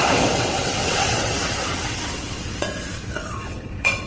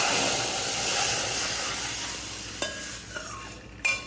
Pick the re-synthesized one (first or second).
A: first